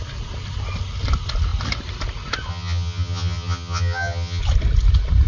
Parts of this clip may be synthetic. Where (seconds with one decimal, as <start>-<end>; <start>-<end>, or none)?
2.5-4.4